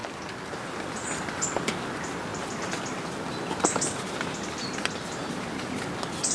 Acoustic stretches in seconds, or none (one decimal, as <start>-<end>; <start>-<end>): 0.0-6.3

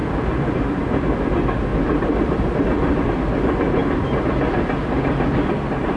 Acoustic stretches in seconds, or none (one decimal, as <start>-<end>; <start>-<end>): 0.0-6.0

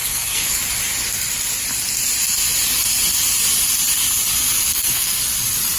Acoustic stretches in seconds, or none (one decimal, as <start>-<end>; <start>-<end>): 0.6-4.7; 5.2-5.8